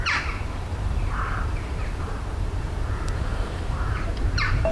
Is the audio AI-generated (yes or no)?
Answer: yes